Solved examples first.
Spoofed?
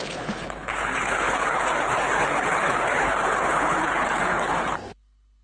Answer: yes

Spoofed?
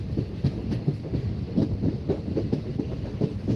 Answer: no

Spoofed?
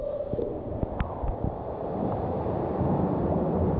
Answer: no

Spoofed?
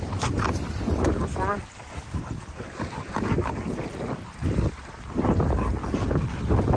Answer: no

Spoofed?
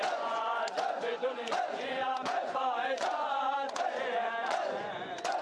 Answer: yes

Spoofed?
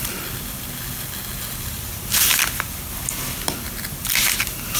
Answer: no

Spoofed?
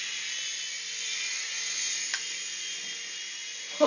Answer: no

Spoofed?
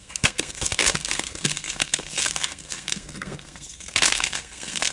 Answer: yes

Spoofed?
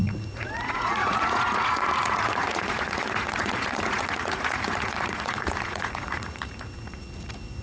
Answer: yes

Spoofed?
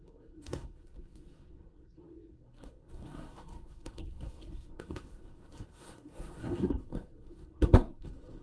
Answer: yes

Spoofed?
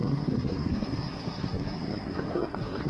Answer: yes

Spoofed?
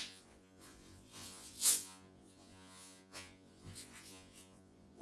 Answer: yes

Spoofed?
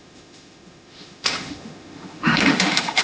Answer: yes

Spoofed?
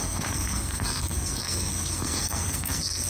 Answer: yes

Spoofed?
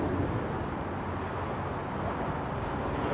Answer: no